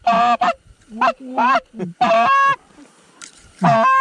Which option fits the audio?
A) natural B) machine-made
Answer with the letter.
B